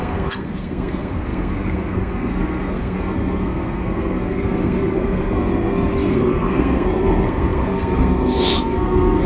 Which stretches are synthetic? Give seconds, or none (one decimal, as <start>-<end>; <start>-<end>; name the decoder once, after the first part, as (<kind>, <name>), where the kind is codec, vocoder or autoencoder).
0.0-9.3 (codec, SNAC)